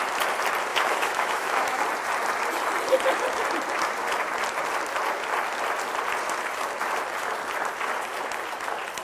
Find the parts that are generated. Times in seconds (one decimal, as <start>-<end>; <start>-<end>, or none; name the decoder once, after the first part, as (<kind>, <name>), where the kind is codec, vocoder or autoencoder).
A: 0.7-1.8 (autoencoder, DAC-VAE)